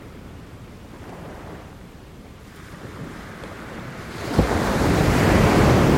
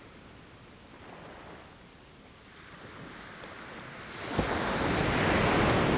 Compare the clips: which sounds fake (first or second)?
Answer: first